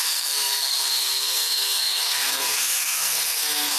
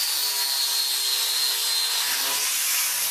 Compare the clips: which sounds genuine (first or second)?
second